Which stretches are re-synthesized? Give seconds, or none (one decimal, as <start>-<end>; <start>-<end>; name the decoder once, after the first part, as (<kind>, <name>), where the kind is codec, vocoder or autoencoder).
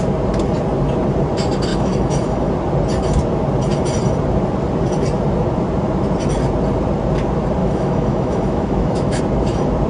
1.7-2.5 (autoencoder, DAC-VAE); 7.6-9.2